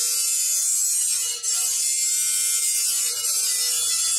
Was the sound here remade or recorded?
recorded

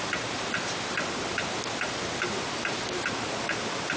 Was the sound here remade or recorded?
remade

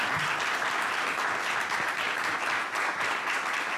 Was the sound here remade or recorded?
recorded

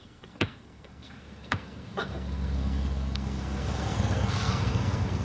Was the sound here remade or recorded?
remade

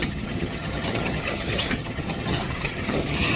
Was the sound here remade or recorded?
remade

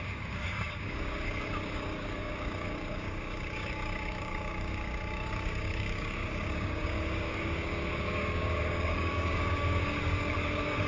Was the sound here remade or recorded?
remade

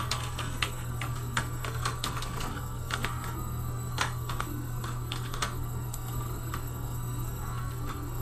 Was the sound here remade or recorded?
remade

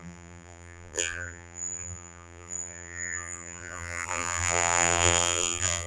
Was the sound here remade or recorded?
remade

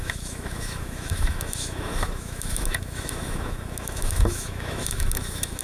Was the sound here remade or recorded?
remade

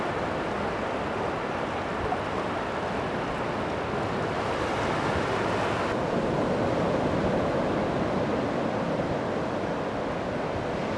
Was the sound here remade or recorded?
recorded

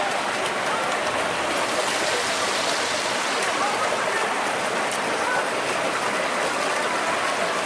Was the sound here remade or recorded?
recorded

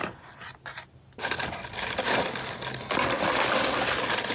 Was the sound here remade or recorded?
recorded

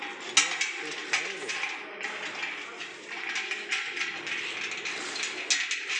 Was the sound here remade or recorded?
recorded